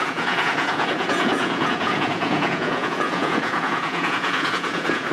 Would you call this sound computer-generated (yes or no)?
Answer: yes